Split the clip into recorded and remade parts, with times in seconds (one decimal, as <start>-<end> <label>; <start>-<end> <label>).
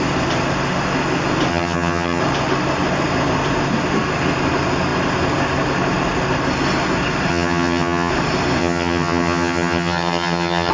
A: 0.0-1.5 recorded; 1.5-2.2 remade; 2.2-7.3 recorded; 7.3-8.1 remade; 8.1-8.6 recorded; 8.6-10.7 remade